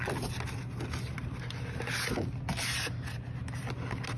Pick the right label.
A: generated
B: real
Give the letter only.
B